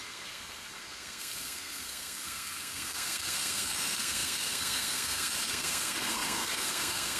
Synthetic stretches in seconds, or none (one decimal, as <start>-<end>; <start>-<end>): 0.0-7.2